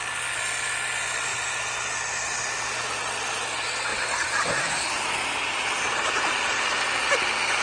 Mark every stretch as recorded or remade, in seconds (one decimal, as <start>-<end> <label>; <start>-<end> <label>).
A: 0.0-1.3 recorded; 1.3-3.0 remade; 3.0-3.9 recorded; 3.9-6.4 remade; 6.4-7.6 recorded